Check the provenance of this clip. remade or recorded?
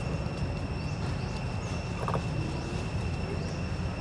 recorded